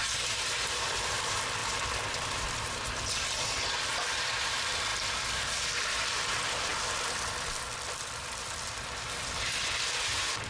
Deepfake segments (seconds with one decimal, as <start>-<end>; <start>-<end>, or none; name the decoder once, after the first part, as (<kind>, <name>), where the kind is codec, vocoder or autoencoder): 0.0-10.5 (vocoder, BigVGAN v2)

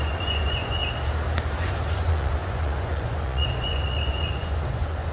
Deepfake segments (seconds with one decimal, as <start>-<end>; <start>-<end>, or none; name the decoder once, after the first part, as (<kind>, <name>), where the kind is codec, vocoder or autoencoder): 0.0-0.8 (vocoder, Vocos); 1.5-5.1

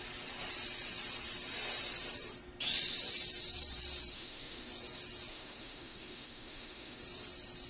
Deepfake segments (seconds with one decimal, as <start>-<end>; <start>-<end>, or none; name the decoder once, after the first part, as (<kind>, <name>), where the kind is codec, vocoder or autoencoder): 4.1-4.7 (autoencoder, DAC-VAE); 5.3-7.0

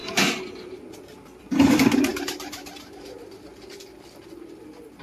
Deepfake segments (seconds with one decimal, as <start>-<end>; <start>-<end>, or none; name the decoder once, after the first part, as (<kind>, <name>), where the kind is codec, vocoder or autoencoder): 2.1-3.0 (vocoder, BigVGAN v2)

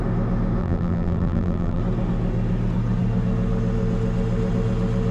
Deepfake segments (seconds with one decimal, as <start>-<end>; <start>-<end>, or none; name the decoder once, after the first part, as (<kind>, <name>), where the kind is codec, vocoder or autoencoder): 0.6-1.8 (vocoder, BigVGAN v2)